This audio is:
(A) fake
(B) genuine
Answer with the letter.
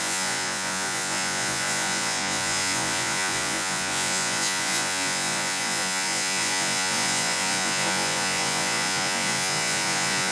A